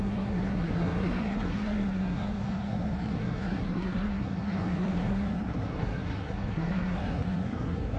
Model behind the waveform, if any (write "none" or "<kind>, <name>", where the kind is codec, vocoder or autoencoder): codec, SNAC